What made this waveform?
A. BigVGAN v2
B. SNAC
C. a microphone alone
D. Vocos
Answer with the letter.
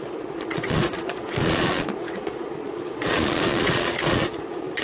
D